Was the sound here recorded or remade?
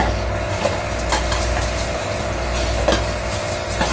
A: recorded